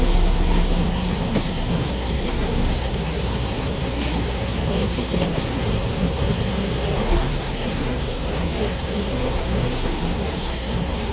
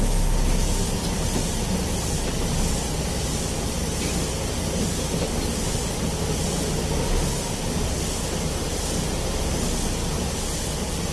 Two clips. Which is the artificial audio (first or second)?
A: first